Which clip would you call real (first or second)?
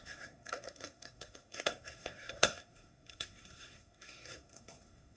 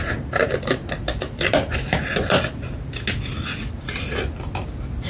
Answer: second